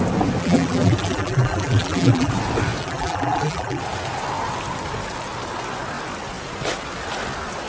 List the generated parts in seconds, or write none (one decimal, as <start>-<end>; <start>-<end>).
0.4-2.3; 2.8-3.8